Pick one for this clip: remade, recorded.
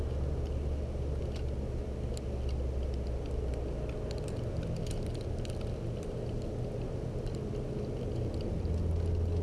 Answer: recorded